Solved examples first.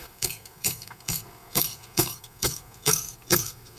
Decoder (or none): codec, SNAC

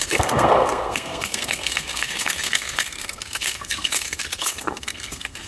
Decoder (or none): codec, SNAC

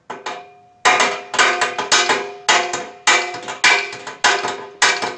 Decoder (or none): none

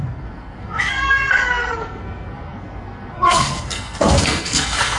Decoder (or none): codec, SNAC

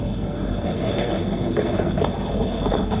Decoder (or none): codec, SNAC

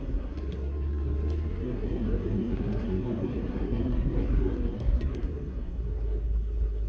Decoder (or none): codec, SNAC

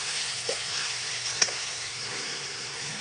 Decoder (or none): codec, SNAC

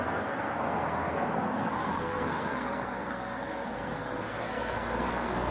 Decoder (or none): codec, SNAC